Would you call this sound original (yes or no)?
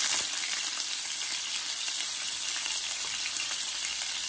yes